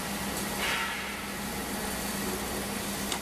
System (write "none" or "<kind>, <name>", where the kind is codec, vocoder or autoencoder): none